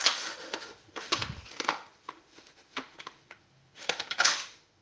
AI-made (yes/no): yes